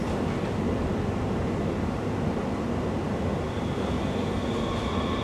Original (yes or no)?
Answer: yes